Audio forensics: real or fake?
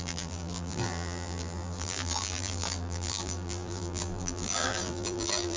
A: fake